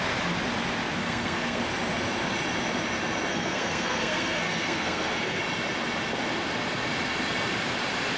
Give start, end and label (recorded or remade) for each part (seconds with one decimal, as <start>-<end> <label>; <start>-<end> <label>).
0.0-1.0 recorded; 1.0-1.6 remade; 1.6-3.3 recorded; 3.3-5.4 remade; 5.4-8.2 recorded